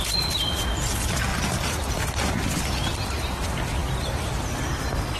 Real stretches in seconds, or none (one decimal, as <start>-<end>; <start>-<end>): 0.0-1.3; 2.6-5.2